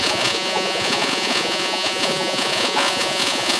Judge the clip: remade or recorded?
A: remade